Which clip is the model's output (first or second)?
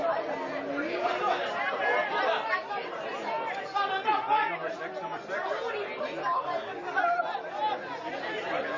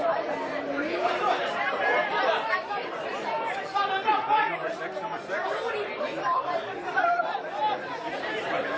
second